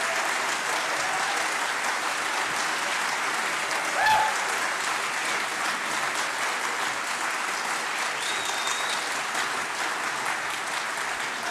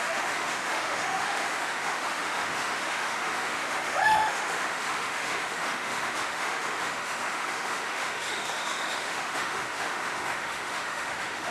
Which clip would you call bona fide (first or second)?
first